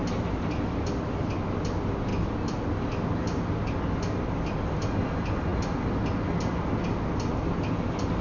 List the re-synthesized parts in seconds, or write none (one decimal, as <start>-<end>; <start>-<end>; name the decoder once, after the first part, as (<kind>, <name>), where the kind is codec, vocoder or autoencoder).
none

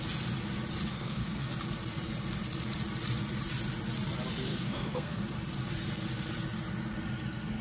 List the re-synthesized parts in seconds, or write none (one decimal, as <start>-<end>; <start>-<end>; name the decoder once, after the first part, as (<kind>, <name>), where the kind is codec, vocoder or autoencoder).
0.9-1.5 (codec, SNAC); 4.5-5.2

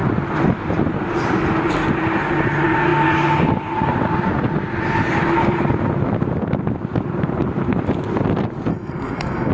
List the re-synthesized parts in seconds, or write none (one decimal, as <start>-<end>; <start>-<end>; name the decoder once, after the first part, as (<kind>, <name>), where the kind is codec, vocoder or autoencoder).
8.7-9.5 (codec, SNAC)

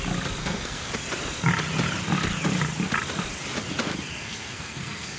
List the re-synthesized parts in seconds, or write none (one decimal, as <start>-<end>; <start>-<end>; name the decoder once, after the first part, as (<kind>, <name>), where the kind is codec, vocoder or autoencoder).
0.4-0.9 (codec, SNAC); 4.1-5.2

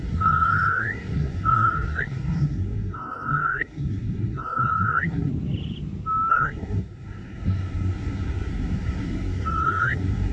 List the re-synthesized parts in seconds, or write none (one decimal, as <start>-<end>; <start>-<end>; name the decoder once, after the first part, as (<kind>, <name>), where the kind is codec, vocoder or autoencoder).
0.0-5.3 (codec, SNAC); 6.3-10.3